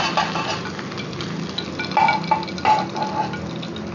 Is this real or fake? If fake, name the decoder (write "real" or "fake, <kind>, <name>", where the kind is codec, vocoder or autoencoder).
real